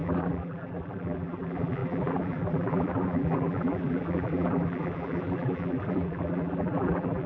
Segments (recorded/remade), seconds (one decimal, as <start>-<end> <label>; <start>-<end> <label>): 0.0-7.3 remade